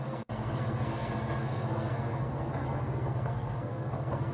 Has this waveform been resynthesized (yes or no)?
yes